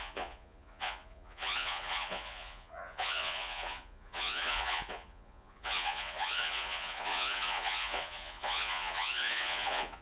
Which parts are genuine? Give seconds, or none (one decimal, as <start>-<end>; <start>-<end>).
none